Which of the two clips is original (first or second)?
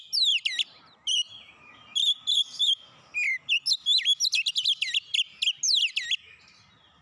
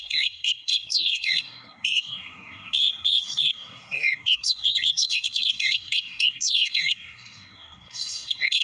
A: first